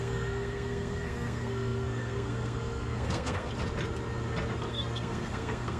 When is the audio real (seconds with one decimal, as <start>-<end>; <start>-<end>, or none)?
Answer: 3.5-4.7

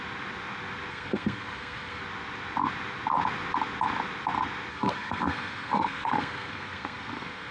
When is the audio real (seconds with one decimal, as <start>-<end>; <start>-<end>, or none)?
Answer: 0.0-0.9; 2.0-4.7